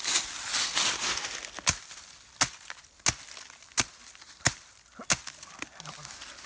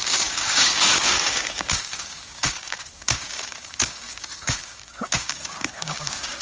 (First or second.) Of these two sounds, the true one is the first